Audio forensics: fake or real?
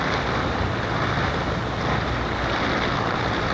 real